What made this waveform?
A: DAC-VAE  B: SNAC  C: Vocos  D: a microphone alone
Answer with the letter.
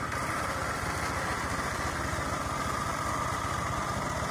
D